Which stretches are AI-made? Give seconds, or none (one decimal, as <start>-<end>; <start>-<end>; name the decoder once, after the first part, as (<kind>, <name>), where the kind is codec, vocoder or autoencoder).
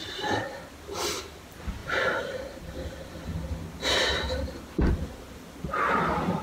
none